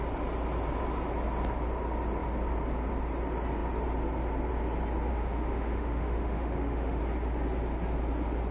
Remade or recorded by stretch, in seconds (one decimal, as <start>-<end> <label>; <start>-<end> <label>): 0.0-5.1 recorded; 5.1-7.0 remade; 7.0-8.5 recorded